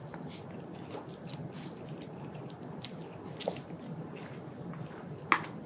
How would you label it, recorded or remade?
recorded